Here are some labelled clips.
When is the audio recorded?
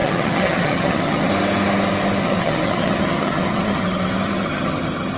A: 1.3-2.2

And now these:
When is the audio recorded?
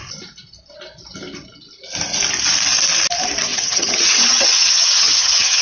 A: 0.0-3.5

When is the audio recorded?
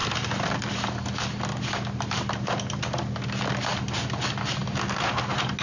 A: 0.0-5.6